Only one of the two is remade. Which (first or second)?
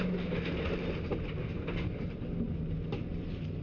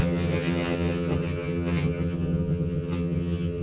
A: second